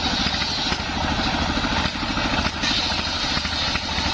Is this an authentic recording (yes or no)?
yes